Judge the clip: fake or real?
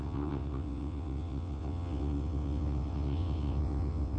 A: fake